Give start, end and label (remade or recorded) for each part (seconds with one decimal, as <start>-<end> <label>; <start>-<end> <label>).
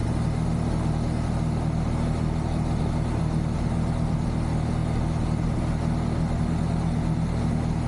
0.0-7.9 recorded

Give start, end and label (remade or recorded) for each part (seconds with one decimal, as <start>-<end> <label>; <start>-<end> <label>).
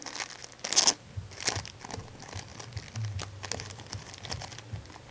0.0-5.1 recorded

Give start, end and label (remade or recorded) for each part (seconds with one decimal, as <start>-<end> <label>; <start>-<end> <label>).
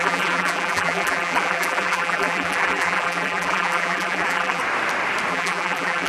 0.0-4.6 remade; 4.6-5.3 recorded; 5.3-6.1 remade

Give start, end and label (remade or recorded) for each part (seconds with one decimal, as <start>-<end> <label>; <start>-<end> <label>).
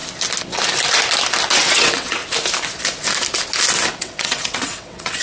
0.0-1.6 recorded; 1.6-2.2 remade; 2.2-4.0 recorded; 4.0-5.2 remade